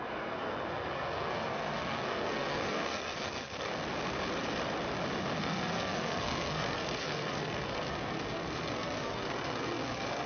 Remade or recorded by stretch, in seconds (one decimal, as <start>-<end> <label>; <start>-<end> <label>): 0.0-3.7 remade; 3.7-5.4 recorded; 5.4-10.3 remade